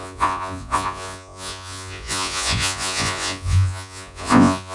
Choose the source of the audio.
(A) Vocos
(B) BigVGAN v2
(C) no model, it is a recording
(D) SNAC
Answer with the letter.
A